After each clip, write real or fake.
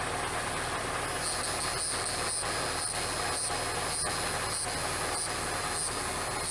real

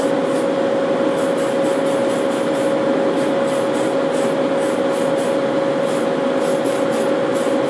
real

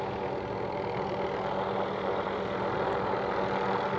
real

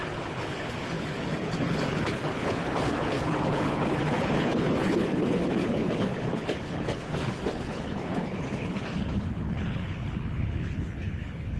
fake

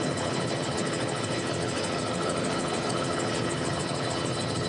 fake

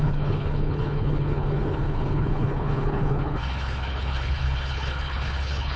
fake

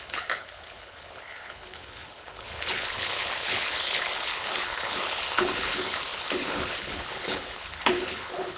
fake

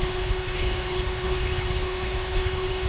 fake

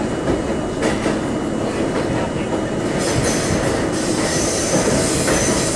real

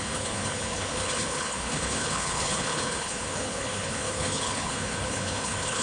fake